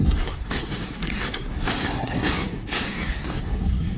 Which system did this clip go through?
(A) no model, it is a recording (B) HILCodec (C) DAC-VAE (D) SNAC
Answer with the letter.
D